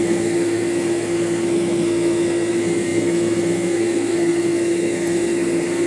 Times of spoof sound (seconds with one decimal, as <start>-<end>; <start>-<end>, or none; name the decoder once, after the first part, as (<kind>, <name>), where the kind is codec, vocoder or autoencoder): 0.0-5.9 (codec, SNAC)